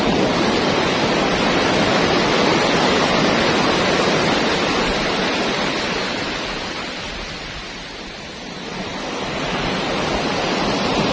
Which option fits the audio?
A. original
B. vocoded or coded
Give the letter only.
A